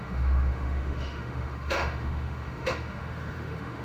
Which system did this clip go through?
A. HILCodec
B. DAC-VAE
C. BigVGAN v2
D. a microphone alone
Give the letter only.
B